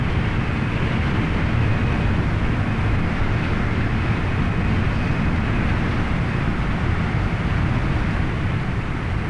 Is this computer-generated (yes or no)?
no